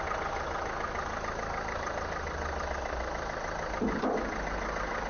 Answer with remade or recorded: recorded